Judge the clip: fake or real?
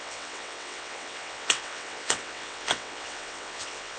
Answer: fake